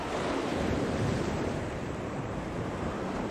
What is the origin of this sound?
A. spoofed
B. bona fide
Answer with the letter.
A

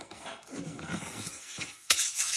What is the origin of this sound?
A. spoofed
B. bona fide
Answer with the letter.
A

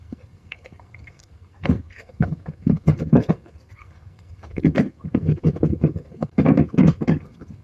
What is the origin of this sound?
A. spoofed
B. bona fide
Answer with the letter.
A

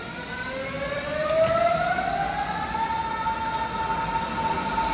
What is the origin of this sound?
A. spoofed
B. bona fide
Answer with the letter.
B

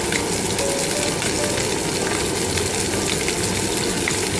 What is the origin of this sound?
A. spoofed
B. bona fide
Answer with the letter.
B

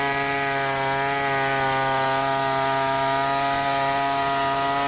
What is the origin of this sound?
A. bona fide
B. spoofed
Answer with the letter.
A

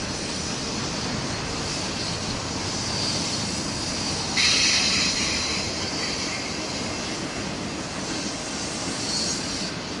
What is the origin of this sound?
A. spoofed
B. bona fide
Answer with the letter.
B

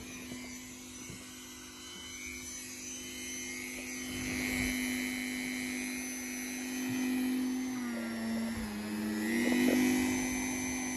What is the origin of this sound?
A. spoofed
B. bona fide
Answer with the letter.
B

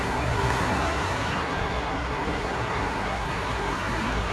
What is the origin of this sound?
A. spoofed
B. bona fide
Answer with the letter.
A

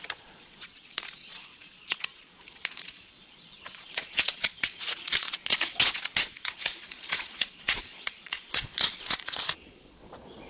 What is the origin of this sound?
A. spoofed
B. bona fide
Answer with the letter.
A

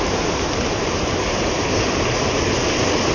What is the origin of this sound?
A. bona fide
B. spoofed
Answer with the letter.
A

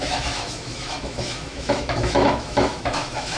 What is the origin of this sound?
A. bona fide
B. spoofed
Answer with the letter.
B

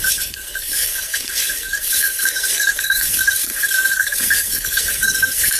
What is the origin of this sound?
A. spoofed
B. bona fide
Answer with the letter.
A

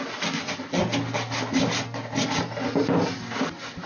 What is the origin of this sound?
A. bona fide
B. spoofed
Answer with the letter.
A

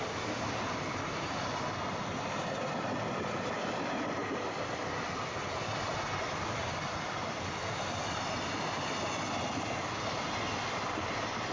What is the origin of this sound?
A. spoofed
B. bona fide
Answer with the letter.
B